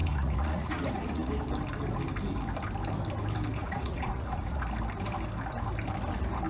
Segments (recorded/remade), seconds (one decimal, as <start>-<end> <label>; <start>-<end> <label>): 0.0-1.3 remade; 1.3-3.6 recorded; 3.6-4.6 remade; 4.6-6.5 recorded